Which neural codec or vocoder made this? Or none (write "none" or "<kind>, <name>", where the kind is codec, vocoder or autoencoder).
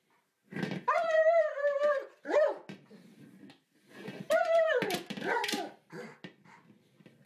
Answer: vocoder, BigVGAN v2